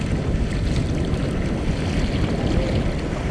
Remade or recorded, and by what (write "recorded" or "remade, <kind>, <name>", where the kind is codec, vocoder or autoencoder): recorded